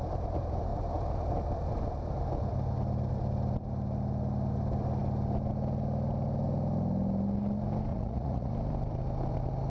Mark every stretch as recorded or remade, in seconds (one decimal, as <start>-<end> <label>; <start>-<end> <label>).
0.0-7.9 recorded; 7.9-8.5 remade; 8.5-9.7 recorded